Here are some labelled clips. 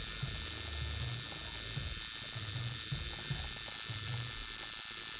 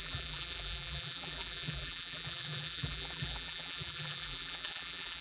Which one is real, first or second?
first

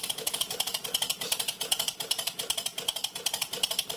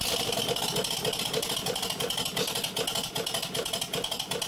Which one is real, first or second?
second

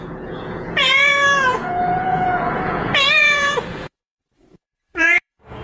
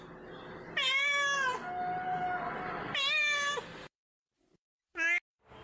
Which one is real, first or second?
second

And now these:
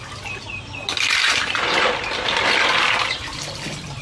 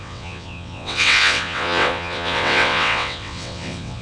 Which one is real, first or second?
first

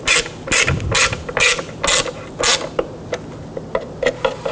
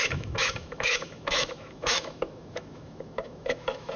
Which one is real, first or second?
first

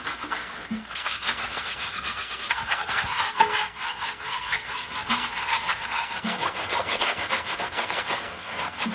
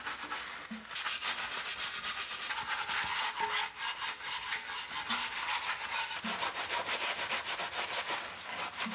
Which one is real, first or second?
second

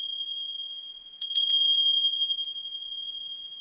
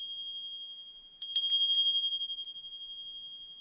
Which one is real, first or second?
second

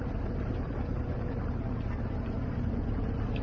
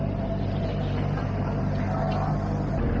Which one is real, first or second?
second